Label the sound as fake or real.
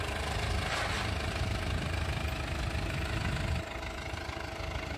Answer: real